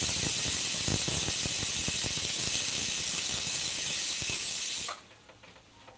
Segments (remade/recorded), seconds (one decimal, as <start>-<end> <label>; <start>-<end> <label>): 0.0-2.2 recorded; 2.2-4.6 remade; 4.6-6.0 recorded